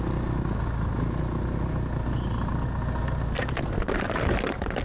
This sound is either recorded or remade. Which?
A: recorded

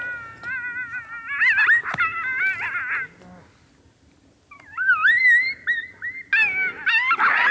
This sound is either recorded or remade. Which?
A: recorded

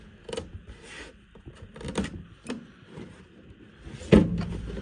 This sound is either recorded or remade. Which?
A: recorded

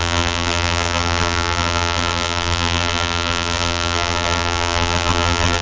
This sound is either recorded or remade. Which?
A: remade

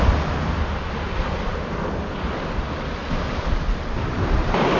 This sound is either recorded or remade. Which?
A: recorded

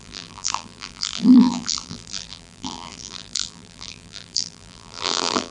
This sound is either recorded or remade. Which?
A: remade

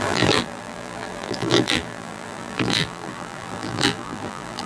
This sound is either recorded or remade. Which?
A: remade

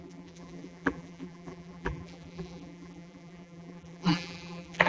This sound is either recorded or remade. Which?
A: remade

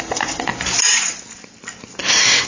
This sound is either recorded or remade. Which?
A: recorded